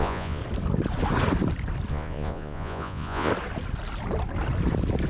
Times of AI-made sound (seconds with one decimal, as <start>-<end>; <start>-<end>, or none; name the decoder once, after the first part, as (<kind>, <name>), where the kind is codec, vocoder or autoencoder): 0.0-0.4 (vocoder, Vocos); 1.9-3.3